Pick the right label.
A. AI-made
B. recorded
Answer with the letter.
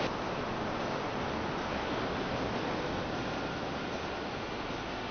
B